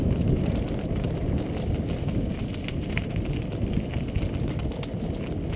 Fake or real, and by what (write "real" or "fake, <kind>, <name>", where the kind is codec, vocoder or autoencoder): real